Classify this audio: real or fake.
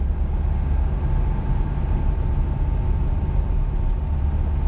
real